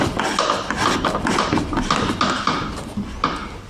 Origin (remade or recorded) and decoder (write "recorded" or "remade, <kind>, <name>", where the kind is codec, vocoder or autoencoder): recorded